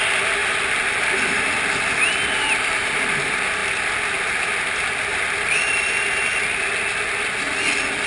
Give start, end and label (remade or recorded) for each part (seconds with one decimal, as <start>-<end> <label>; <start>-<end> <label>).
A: 0.0-8.1 recorded